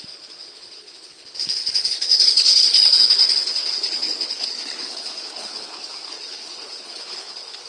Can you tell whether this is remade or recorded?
remade